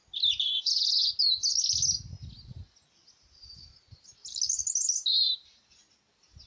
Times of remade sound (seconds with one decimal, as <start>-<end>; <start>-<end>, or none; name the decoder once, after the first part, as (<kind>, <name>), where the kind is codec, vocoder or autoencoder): none